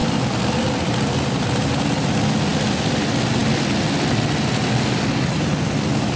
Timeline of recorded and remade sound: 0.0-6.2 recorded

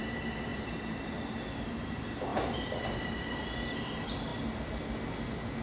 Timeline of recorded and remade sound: 0.0-0.5 recorded; 0.5-1.4 remade; 1.4-2.3 recorded; 2.3-3.1 remade; 3.1-5.6 recorded